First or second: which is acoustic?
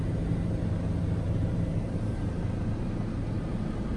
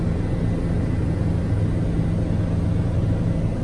second